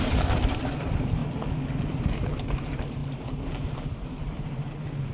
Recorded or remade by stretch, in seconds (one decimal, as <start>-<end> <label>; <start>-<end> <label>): 0.0-1.2 remade; 1.2-1.8 recorded; 1.8-5.1 remade